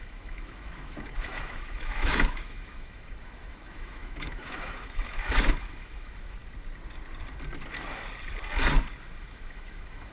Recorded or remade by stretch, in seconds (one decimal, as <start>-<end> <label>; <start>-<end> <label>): 0.0-6.4 remade; 6.4-9.2 recorded; 9.2-10.1 remade